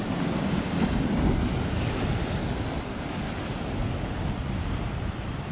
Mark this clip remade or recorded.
recorded